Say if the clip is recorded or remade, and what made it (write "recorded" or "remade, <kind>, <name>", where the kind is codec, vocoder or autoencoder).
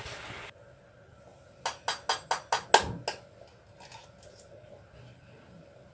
recorded